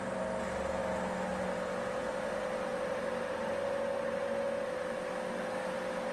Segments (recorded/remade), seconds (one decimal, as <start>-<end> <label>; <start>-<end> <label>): 0.0-6.1 recorded